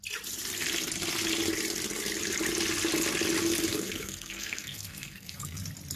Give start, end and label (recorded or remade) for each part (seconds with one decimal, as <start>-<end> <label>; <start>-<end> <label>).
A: 0.0-3.7 recorded; 3.7-5.6 remade; 5.6-6.0 recorded